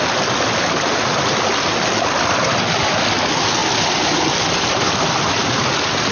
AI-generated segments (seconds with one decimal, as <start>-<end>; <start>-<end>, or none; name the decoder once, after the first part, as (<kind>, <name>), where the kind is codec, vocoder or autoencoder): none